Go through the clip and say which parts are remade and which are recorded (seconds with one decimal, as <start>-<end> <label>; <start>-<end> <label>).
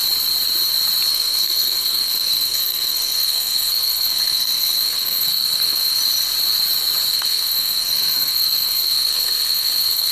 0.0-1.1 recorded; 1.1-6.0 remade; 6.0-7.1 recorded; 7.1-10.1 remade